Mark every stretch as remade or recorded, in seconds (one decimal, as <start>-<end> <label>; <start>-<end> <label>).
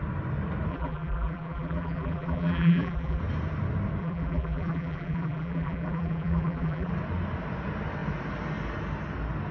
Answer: 0.0-0.7 recorded; 0.7-3.2 remade; 3.2-4.0 recorded; 4.0-6.9 remade; 6.9-9.5 recorded